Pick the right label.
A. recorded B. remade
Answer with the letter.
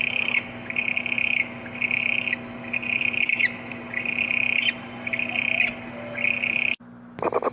A